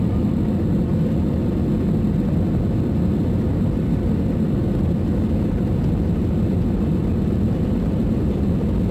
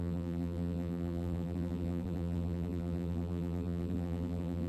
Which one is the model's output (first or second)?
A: second